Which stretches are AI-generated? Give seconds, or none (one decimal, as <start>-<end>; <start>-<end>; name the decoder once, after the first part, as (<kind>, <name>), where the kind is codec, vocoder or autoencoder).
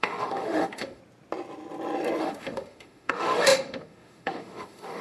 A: 0.0-1.0 (autoencoder, DAC-VAE); 2.2-5.0